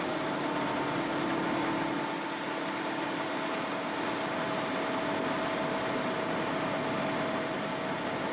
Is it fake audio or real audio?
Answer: real